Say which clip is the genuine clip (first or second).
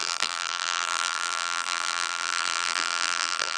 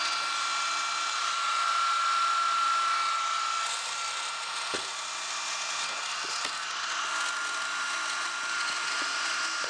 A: second